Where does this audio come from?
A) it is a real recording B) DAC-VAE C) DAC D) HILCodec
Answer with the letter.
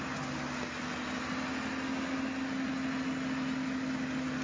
A